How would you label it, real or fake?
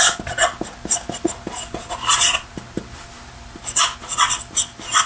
real